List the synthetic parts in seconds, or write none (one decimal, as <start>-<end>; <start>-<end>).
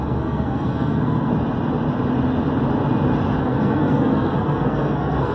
0.0-1.3; 3.4-5.3